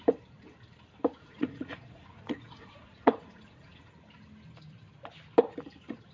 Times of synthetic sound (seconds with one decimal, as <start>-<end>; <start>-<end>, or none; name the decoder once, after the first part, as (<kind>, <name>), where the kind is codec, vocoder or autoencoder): 1.2-3.9 (vocoder, Vocos)